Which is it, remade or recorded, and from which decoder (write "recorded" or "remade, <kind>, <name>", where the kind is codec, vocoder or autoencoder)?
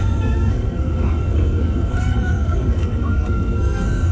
remade, codec, SNAC